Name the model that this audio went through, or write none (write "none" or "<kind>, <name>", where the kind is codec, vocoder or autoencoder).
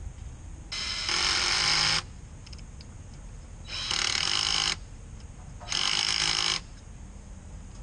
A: none